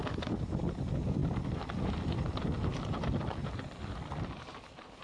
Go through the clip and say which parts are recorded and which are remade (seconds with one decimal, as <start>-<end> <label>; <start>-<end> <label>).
0.0-1.2 recorded; 1.2-2.4 remade; 2.4-3.4 recorded; 3.4-3.9 remade; 3.9-5.0 recorded